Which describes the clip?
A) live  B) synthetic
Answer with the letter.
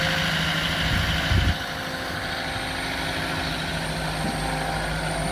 A